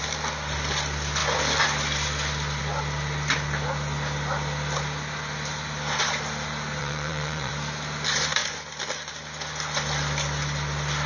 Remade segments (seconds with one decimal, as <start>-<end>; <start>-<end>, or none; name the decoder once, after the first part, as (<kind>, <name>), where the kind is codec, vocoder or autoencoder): 6.8-7.5 (vocoder, WaveNeXt)